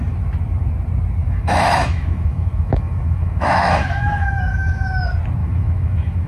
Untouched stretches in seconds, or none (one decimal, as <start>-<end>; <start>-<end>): 0.0-1.2; 5.0-5.4